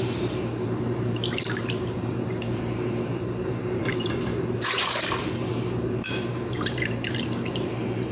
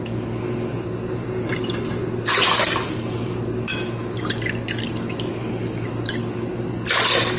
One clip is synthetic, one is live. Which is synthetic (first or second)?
first